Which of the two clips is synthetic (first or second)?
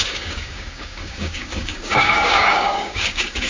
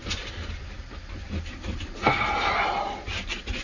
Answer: first